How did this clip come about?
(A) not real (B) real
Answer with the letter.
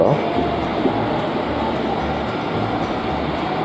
B